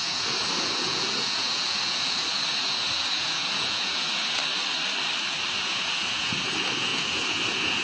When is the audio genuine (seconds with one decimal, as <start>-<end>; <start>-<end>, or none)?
4.4-5.5